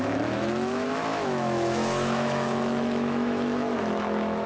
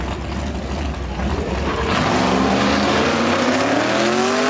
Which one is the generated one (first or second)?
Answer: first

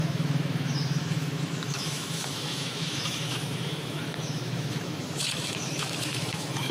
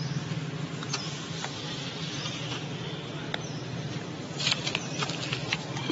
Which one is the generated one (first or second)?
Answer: first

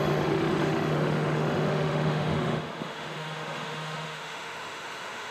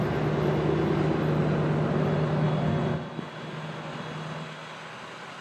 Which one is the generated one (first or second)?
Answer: first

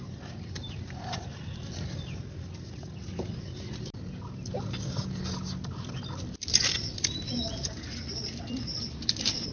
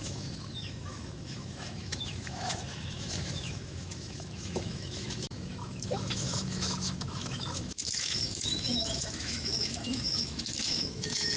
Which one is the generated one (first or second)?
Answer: second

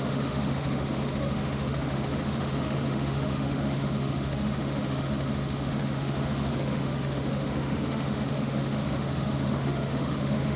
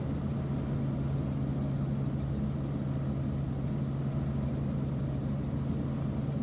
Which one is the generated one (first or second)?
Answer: first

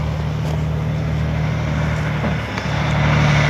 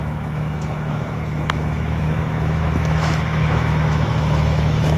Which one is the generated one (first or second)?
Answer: second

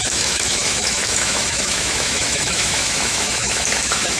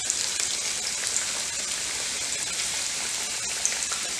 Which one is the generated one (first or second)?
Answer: first